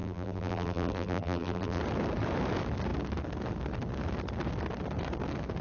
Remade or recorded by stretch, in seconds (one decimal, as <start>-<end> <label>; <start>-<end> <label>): 0.0-1.8 remade; 1.8-5.6 recorded